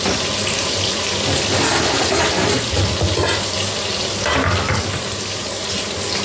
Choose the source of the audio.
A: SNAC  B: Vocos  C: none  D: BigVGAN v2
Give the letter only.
C